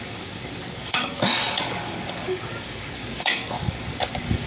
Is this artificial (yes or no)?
yes